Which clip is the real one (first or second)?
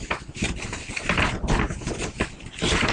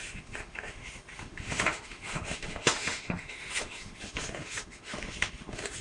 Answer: first